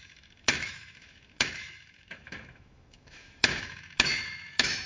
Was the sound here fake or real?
fake